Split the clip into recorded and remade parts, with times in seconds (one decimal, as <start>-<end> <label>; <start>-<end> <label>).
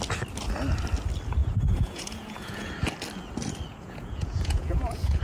0.0-1.4 recorded; 1.4-2.7 remade; 2.7-3.7 recorded; 3.7-5.2 remade